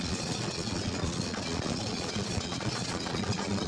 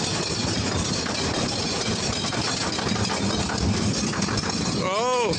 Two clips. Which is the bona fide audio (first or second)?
second